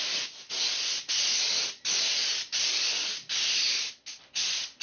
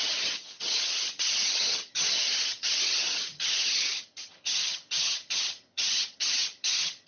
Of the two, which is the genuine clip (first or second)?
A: first